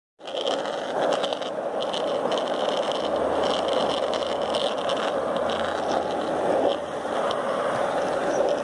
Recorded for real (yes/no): yes